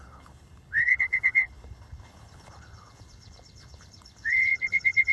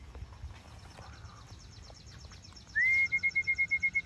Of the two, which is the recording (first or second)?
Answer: second